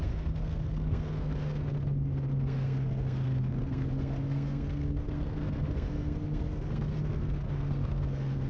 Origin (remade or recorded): remade